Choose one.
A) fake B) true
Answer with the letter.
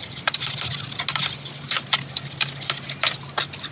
B